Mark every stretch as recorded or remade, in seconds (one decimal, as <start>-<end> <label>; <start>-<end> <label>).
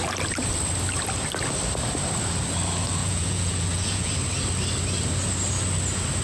0.0-3.0 recorded; 3.0-4.1 remade; 4.1-6.2 recorded